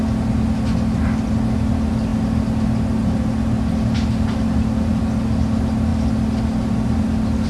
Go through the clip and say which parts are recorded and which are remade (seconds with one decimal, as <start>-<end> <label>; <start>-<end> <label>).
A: 0.0-7.5 recorded